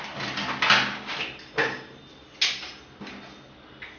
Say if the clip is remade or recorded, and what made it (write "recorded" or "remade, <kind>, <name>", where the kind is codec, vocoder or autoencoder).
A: recorded